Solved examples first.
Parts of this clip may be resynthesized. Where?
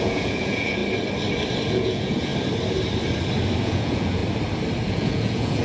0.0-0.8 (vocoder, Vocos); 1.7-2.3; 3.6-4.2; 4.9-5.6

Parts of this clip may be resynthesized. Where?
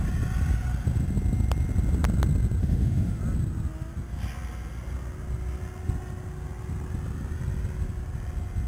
2.6-3.2 (autoencoder, DAC-VAE)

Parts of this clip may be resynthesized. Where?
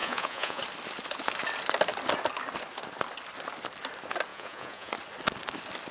0.0-0.6 (vocoder, Vocos); 4.3-4.9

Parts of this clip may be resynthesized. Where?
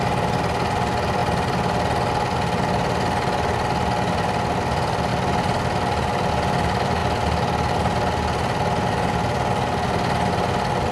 none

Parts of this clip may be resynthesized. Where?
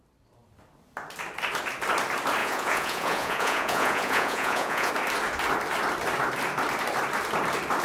2.4-4.9 (vocoder, Vocos)